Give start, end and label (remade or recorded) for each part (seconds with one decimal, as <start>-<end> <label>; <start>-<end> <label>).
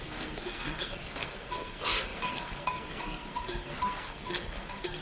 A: 0.0-5.0 remade